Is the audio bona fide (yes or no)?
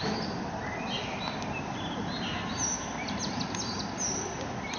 yes